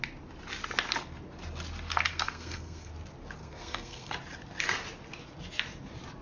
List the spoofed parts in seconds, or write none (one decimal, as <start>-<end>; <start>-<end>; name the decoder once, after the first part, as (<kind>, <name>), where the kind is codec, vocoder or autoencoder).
2.1-2.9 (codec, SNAC); 3.4-4.1